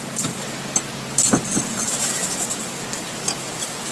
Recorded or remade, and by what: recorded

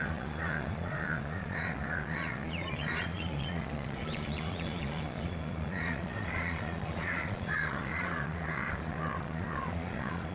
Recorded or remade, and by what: remade, vocoder, Vocos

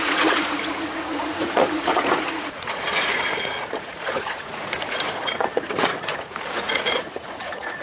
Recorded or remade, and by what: remade, vocoder, Vocos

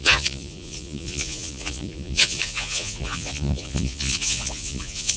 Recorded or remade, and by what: remade, vocoder, Vocos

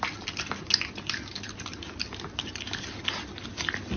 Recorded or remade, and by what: recorded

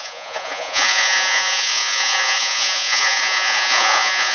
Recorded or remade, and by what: remade, vocoder, Vocos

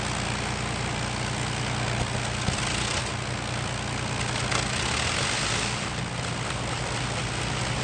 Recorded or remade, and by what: recorded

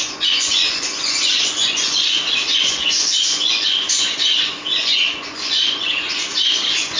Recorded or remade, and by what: remade, vocoder, Vocos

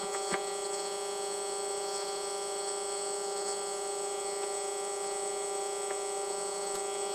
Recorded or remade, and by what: remade, vocoder, Vocos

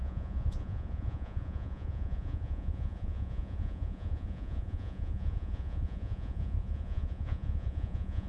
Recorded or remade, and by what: remade, vocoder, Vocos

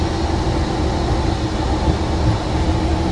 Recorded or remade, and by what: recorded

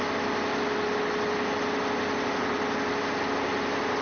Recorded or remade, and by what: recorded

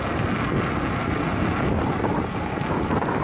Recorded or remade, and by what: recorded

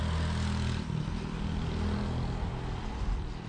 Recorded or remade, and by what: recorded